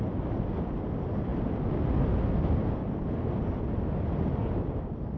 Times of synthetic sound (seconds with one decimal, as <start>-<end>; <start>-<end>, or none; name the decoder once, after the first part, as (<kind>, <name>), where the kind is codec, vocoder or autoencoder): none

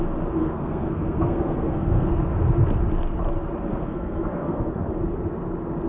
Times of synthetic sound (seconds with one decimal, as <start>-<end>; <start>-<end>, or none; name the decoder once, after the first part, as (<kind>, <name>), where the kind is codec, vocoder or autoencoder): 0.4-2.1 (codec, SNAC); 3.7-4.7